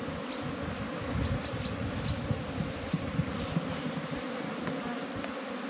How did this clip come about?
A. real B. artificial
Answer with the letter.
A